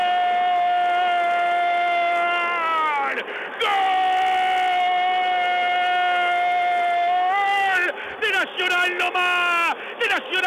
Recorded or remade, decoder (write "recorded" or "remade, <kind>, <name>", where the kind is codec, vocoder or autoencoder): recorded